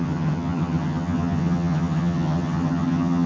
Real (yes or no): no